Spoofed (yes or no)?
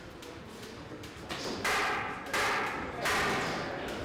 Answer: no